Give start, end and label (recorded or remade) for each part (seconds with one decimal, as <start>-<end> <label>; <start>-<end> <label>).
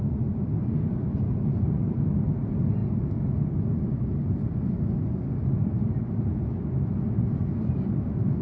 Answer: 0.0-0.4 recorded; 0.4-2.3 remade; 2.3-4.4 recorded; 4.4-6.0 remade; 6.0-8.4 recorded